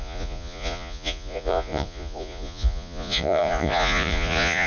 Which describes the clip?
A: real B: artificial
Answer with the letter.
B